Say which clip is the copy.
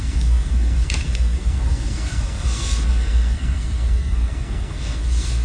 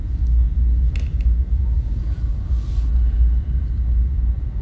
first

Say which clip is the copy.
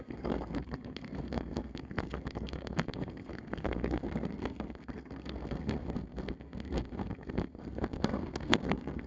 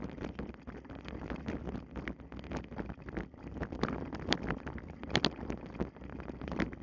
first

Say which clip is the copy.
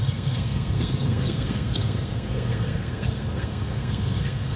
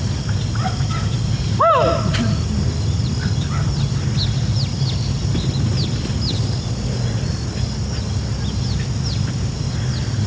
first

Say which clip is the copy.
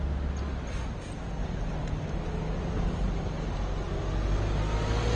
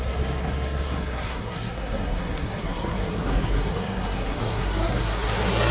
second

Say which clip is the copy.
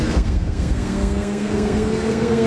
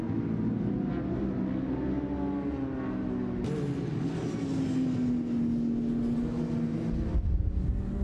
first